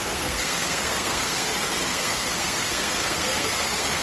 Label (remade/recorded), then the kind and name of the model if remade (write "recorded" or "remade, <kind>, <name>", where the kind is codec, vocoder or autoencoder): remade, codec, SNAC